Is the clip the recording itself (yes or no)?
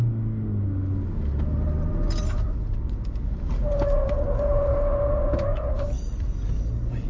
yes